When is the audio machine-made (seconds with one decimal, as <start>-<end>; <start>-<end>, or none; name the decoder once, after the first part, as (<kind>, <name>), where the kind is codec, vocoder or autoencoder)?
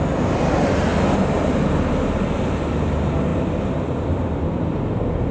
none